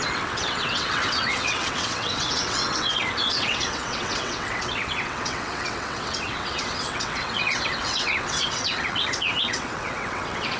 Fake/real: fake